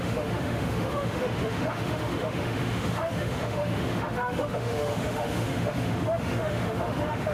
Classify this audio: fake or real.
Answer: fake